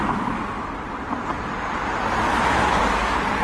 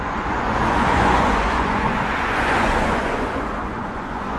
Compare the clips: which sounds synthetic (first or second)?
second